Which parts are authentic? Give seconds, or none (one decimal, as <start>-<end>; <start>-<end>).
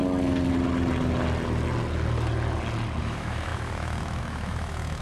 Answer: 0.0-3.0